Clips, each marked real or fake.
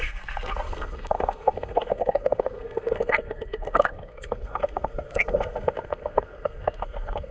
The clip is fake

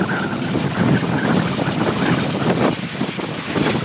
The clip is real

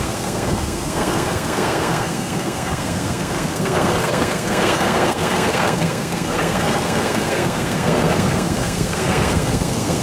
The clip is fake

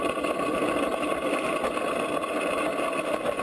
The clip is real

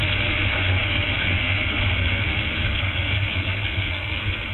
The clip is fake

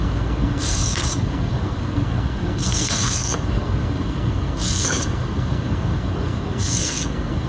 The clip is fake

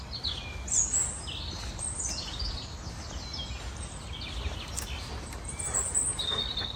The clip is real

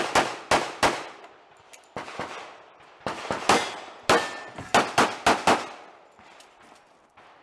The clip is real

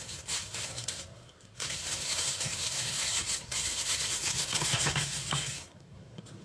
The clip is fake